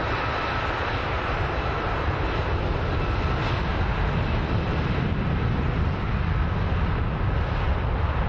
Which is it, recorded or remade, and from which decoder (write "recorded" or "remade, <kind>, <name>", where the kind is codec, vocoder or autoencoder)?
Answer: recorded